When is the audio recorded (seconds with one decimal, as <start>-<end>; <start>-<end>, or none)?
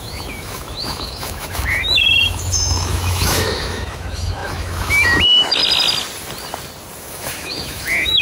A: 5.6-7.0